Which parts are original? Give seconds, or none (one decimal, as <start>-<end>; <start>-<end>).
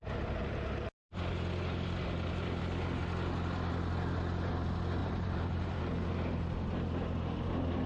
0.0-5.0; 5.8-7.9